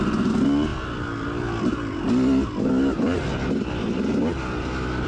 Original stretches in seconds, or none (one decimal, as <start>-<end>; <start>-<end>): 0.0-5.1